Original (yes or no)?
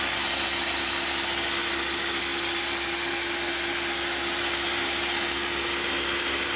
yes